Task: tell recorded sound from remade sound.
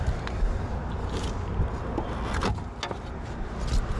recorded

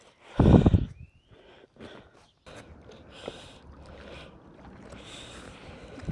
recorded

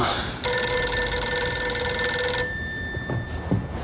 recorded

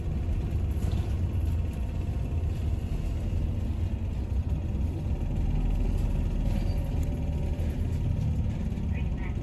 recorded